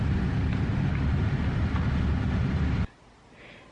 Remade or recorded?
recorded